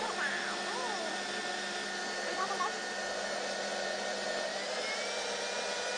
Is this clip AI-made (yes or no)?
no